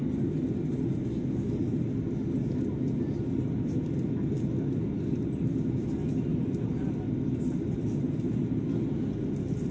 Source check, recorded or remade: recorded